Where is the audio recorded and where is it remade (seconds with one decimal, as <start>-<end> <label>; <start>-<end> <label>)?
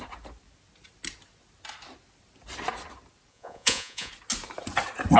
0.0-3.3 recorded; 3.3-4.1 remade; 4.1-5.2 recorded